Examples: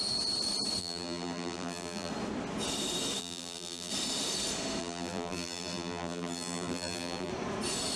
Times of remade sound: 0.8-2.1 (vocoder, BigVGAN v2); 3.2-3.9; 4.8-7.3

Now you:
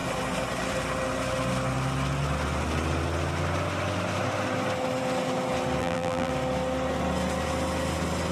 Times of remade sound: 5.8-6.3 (vocoder, BigVGAN v2)

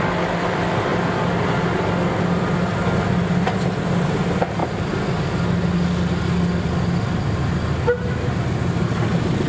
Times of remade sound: none

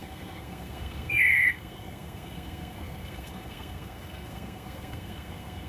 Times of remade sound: 0.0-5.7 (codec, SNAC)

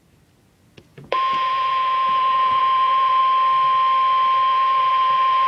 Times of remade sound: 0.9-3.2 (vocoder, Vocos); 4.5-5.5

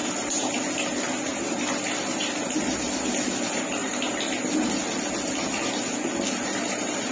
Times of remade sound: 0.0-0.6 (vocoder, BigVGAN v2); 1.3-2.2